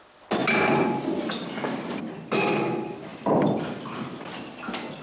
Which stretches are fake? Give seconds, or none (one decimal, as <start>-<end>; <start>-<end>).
0.4-2.1; 3.1-5.0